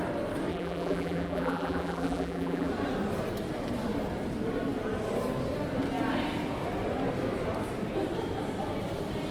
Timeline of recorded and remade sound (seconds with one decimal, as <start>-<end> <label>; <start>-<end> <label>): 0.0-0.5 recorded; 0.5-2.7 remade; 2.7-9.3 recorded